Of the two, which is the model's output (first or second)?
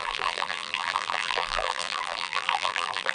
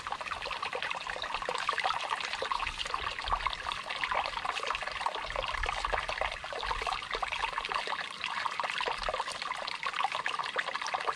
first